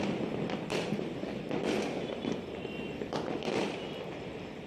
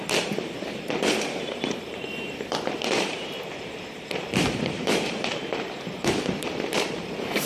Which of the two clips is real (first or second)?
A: first